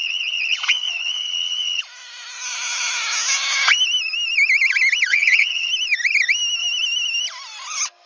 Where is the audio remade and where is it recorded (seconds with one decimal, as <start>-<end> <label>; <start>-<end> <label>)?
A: 0.0-1.8 remade; 1.8-5.1 recorded; 5.1-5.7 remade; 5.7-8.1 recorded